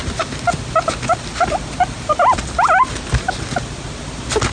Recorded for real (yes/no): yes